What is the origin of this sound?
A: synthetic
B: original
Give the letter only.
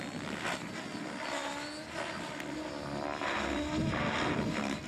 B